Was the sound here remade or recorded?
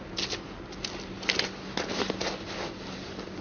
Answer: recorded